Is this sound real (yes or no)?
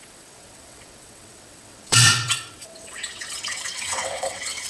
no